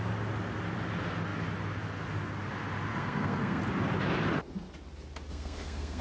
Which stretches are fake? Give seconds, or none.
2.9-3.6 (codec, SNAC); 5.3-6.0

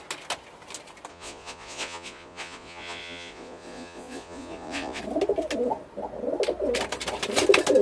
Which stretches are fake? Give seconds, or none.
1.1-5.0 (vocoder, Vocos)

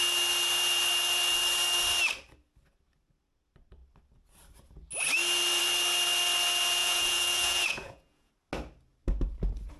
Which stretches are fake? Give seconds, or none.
6.8-8.3 (vocoder, Vocos)

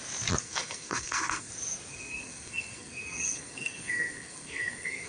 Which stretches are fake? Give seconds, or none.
0.4-1.5 (codec, SNAC); 1.9-5.1

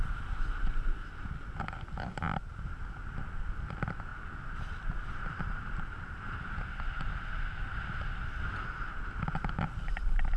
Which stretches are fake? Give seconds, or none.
none